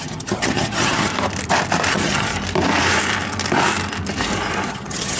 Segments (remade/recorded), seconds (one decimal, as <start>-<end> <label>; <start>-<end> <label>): 0.0-1.1 remade; 1.1-1.9 recorded; 1.9-2.3 remade; 2.3-4.7 recorded; 4.7-5.2 remade